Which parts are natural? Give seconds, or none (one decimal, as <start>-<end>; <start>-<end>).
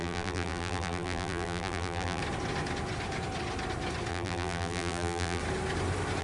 2.2-4.1; 5.4-6.2